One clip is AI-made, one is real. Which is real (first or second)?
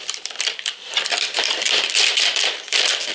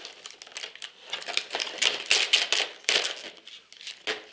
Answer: second